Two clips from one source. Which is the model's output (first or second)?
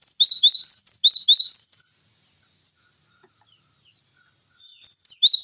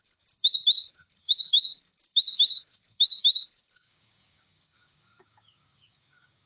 second